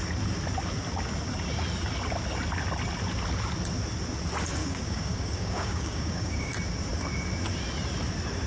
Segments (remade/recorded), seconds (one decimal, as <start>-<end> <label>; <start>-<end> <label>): 0.0-4.6 recorded; 4.6-6.5 remade; 6.5-8.5 recorded